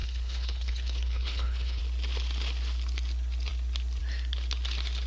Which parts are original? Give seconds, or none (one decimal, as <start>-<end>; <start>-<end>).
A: 1.8-5.1